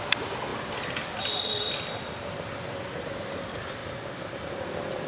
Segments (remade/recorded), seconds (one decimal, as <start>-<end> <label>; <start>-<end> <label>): 0.0-3.8 recorded; 3.8-5.1 remade